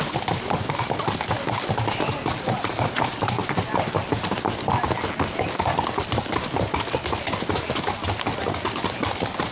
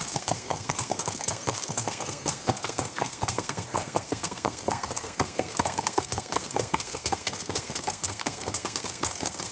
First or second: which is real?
first